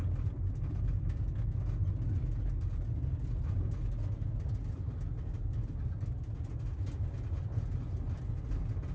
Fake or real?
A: real